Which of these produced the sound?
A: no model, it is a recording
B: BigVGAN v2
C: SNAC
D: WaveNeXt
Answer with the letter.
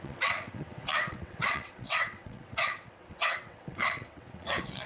D